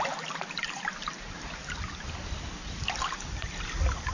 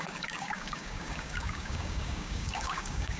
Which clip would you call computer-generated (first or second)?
second